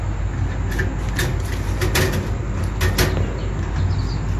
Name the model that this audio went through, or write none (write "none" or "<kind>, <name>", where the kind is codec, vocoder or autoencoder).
none